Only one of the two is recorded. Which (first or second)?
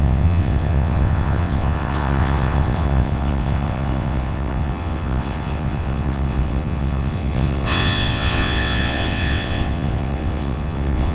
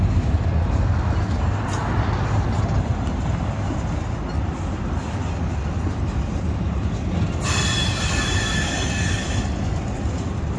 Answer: second